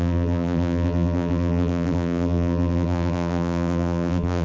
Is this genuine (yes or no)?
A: no